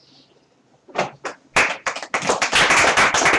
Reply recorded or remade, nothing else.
recorded